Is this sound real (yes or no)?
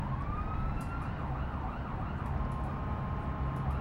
yes